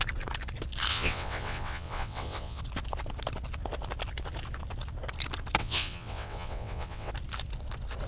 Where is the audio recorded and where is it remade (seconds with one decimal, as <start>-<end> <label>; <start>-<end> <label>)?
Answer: 0.0-0.9 recorded; 0.9-2.6 remade; 2.6-5.6 recorded; 5.6-7.1 remade; 7.1-8.1 recorded